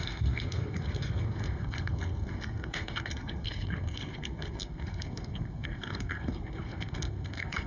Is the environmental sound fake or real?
fake